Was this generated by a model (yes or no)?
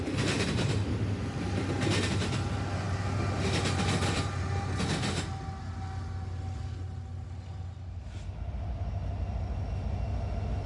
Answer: no